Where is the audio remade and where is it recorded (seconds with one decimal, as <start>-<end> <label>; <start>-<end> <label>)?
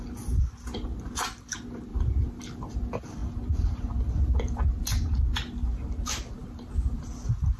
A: 0.0-1.9 recorded; 1.9-2.7 remade; 2.7-6.4 recorded; 6.4-7.1 remade; 7.1-7.6 recorded